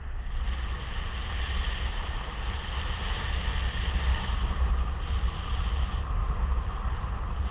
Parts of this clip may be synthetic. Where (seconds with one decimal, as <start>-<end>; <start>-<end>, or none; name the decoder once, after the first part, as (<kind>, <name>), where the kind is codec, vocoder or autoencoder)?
6.2-7.5 (vocoder, BigVGAN v2)